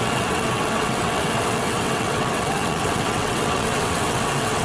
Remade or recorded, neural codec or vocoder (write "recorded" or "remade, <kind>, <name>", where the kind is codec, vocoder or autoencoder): remade, vocoder, WaveNeXt